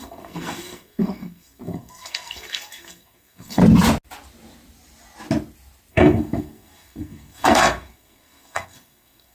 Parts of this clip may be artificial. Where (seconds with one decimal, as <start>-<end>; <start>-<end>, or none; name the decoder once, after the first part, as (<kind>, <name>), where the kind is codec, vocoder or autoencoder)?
0.0-3.6 (codec, SNAC); 5.9-9.3